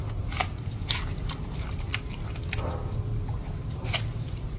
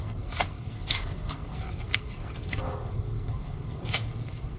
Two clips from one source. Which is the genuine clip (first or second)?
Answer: first